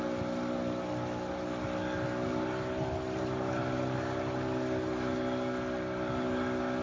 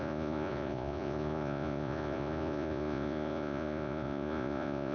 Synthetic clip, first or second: second